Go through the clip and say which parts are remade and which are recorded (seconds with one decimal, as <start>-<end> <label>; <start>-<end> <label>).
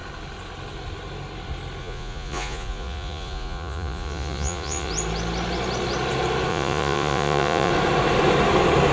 0.0-1.8 recorded; 1.8-4.9 remade; 4.9-6.5 recorded; 6.5-7.7 remade; 7.7-8.9 recorded